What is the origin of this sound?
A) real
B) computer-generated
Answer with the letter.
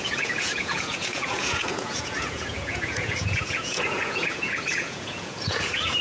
B